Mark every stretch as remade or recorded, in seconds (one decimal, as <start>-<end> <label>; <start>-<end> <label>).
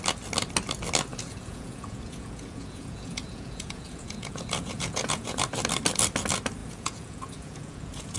0.0-1.1 recorded; 1.1-5.4 remade; 5.4-6.6 recorded; 6.6-8.2 remade